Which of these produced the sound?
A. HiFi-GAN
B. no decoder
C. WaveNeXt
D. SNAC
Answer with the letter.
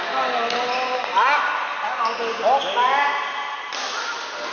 B